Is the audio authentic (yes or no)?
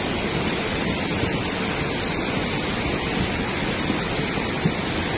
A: no